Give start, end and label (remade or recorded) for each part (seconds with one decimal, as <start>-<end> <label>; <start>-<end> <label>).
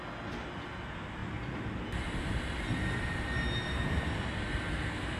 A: 0.0-5.2 recorded